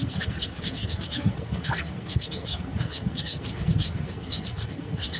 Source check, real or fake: fake